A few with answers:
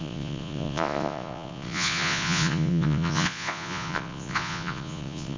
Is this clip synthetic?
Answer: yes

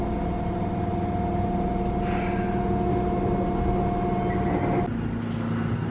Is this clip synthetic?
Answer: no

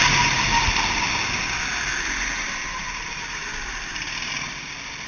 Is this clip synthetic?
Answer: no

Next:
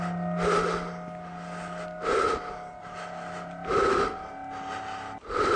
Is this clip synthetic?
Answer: no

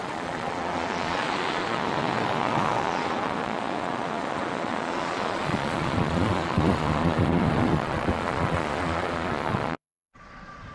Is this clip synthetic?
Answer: yes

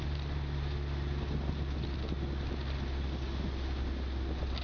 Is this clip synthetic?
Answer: no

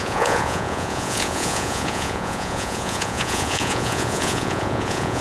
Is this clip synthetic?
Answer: yes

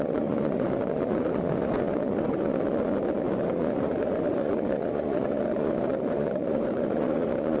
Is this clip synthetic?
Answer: yes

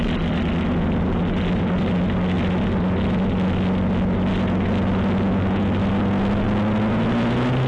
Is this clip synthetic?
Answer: no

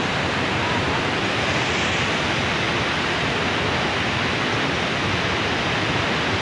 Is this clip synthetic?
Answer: no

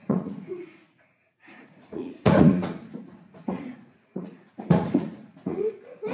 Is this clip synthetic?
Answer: yes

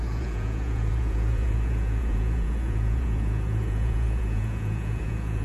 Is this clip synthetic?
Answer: yes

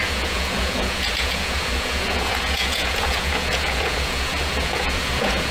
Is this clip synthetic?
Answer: yes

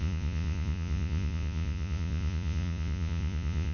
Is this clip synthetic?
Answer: yes